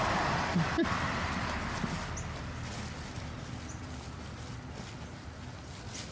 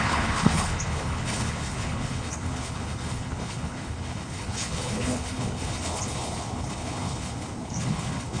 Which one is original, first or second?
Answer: first